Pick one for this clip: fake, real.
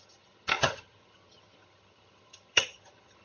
fake